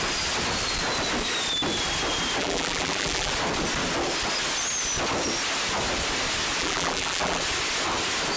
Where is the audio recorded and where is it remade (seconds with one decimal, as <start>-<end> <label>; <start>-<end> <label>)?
0.0-2.4 recorded; 2.4-3.3 remade; 3.3-6.6 recorded; 6.6-7.4 remade; 7.4-8.4 recorded